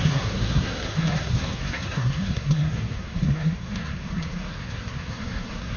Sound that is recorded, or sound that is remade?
remade